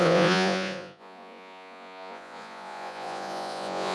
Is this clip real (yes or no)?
no